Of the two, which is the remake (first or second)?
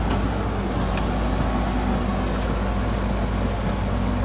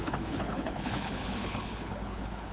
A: second